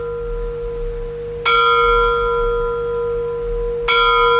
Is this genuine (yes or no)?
yes